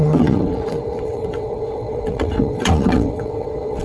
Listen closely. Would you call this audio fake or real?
fake